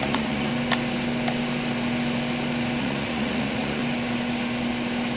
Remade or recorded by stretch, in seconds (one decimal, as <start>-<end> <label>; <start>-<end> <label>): 0.0-0.5 remade; 0.5-2.8 recorded; 2.8-3.8 remade; 3.8-5.2 recorded